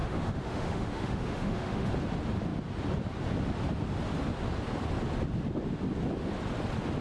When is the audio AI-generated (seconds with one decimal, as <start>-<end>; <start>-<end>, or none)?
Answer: 0.0-1.9